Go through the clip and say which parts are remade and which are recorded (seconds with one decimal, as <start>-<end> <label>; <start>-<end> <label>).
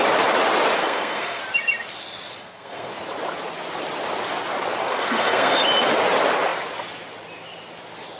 0.0-0.8 recorded; 0.8-1.4 remade; 1.4-2.4 recorded; 2.4-2.9 remade; 2.9-4.8 recorded; 4.8-5.6 remade; 5.6-8.2 recorded